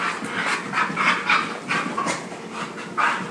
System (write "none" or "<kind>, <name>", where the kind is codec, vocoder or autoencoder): none